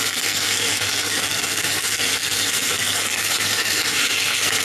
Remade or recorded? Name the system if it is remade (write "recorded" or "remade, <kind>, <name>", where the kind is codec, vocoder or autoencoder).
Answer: remade, codec, SNAC